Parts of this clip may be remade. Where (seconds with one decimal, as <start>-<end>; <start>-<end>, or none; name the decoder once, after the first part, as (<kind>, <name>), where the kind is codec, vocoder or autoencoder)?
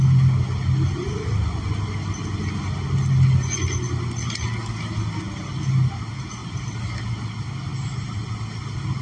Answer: 7.7-8.3 (vocoder, BigVGAN v2)